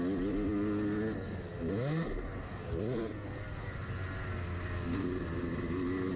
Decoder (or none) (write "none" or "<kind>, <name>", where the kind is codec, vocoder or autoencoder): none